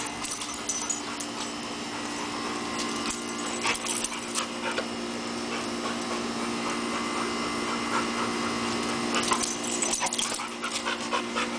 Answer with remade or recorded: recorded